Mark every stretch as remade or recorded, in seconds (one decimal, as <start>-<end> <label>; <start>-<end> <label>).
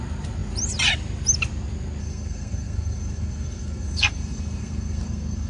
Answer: 0.0-2.0 recorded; 2.0-5.5 remade